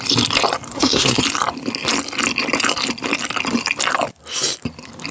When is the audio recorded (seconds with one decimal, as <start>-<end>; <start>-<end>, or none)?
0.0-0.7; 1.2-5.1